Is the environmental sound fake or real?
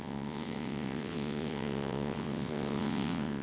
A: fake